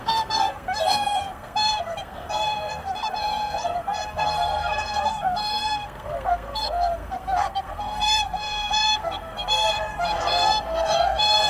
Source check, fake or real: fake